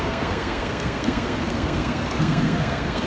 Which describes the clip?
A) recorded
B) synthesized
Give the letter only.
B